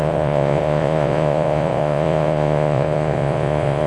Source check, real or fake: fake